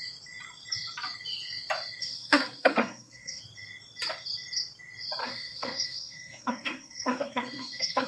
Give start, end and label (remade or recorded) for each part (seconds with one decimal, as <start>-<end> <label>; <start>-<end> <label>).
0.0-2.0 recorded; 2.0-3.4 remade; 3.4-5.2 recorded; 5.2-8.1 remade